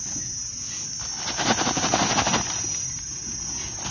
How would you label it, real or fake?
real